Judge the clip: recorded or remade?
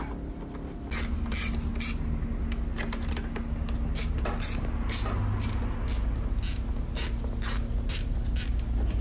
recorded